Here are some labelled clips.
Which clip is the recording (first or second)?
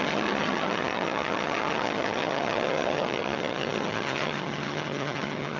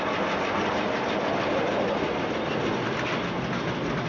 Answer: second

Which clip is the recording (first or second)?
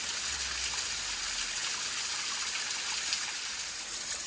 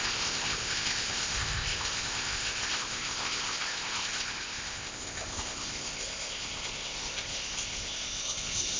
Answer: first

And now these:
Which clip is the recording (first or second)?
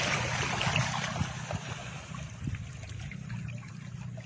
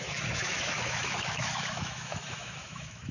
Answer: first